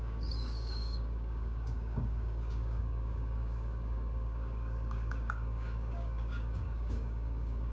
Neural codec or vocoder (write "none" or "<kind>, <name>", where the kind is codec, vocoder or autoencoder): codec, DAC